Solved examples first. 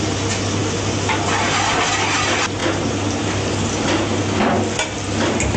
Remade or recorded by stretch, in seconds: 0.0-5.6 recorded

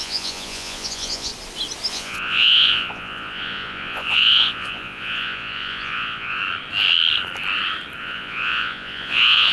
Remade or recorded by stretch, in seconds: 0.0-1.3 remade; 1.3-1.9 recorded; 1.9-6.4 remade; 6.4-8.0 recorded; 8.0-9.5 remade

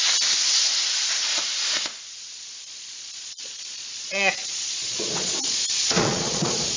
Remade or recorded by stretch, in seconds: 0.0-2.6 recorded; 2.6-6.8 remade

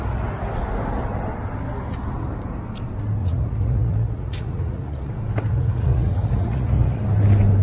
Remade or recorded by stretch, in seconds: 0.0-3.2 recorded; 3.2-5.1 remade; 5.1-5.5 recorded; 5.5-7.0 remade; 7.0-7.6 recorded

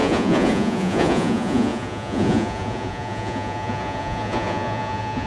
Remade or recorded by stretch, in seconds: 0.0-5.3 remade

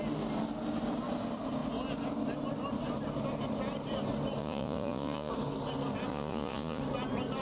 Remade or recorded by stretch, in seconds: 0.0-4.4 recorded; 4.4-5.3 remade; 5.3-6.1 recorded; 6.1-6.8 remade; 6.8-7.4 recorded

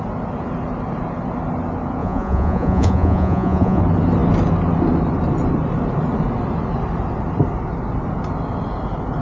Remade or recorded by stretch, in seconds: 0.0-2.0 recorded; 2.0-3.8 remade; 3.8-9.2 recorded

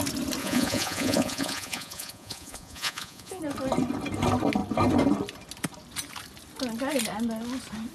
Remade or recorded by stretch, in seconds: 0.0-0.4 recorded; 0.4-3.4 remade; 3.4-7.9 recorded